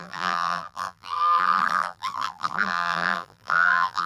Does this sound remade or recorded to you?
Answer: remade